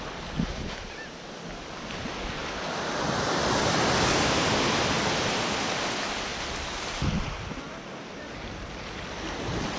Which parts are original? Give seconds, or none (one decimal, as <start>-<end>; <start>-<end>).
0.0-9.8

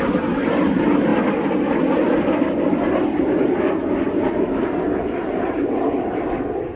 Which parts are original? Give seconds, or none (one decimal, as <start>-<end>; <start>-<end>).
0.0-6.8